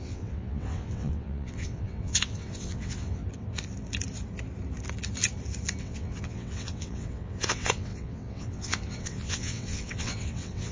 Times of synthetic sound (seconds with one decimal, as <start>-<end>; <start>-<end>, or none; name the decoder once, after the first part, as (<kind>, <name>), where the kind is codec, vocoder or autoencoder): 0.0-3.2 (vocoder, WaveNeXt); 5.8-10.7

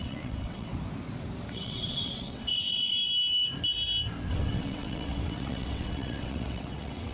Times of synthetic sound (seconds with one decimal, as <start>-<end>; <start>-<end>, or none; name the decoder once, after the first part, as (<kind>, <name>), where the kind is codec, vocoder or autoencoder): 0.0-0.7 (vocoder, WaveNeXt); 1.5-3.0; 4.3-7.1